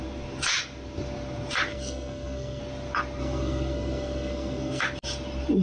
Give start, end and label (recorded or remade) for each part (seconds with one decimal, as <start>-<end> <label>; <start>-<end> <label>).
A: 0.0-1.7 recorded; 1.7-2.6 remade; 2.6-3.2 recorded; 3.2-4.8 remade; 4.8-5.6 recorded